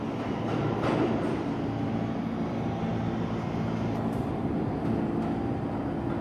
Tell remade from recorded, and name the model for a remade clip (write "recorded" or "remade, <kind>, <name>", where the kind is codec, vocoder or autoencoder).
recorded